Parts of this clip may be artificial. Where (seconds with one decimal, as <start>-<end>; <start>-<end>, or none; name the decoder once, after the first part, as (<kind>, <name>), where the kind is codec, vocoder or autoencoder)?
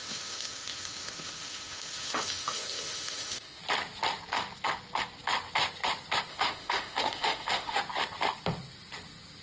0.0-3.6 (autoencoder, DAC-VAE); 6.3-7.8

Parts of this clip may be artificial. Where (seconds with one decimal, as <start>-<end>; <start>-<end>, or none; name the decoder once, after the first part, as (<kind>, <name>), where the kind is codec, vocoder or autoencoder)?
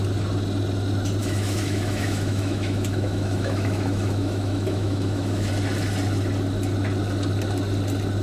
1.2-5.5 (autoencoder, DAC-VAE)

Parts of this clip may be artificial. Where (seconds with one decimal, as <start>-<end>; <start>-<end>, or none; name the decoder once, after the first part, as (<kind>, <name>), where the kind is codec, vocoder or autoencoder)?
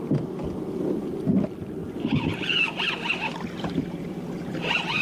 1.8-5.0 (vocoder, BigVGAN v2)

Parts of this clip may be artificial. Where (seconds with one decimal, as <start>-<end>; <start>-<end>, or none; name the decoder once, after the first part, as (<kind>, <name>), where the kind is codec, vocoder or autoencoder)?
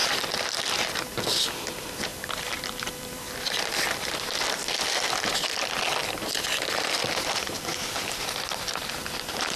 0.0-0.7 (vocoder, BigVGAN v2); 2.1-4.9; 6.0-8.8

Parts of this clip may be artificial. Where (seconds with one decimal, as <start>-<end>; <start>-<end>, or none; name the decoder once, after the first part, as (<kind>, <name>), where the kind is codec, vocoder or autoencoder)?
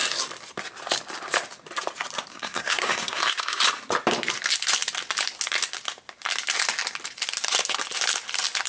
2.3-3.6 (codec, SNAC)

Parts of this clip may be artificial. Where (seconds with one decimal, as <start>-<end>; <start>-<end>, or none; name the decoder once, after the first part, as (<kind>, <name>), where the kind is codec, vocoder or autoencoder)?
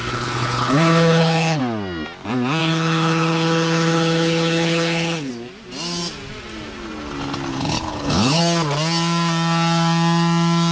0.0-1.6 (codec, HILCodec); 2.6-5.3; 7.5-8.4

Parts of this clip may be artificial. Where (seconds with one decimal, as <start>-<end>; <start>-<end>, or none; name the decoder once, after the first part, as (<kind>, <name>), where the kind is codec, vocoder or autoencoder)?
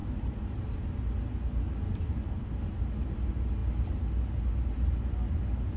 none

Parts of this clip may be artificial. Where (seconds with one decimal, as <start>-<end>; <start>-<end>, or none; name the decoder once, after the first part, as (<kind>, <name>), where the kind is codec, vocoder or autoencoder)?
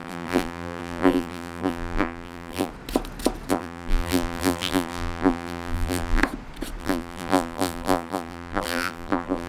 0.0-2.7 (vocoder, BigVGAN v2); 3.5-6.2; 6.8-9.5